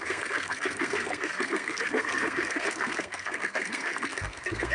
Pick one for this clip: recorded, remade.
remade